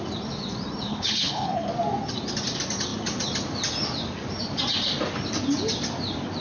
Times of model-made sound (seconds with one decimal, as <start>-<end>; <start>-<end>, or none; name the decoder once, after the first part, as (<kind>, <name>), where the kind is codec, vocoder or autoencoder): 0.9-1.7 (codec, HILCodec)